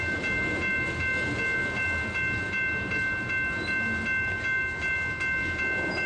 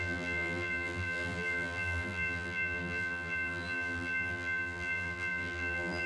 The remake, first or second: second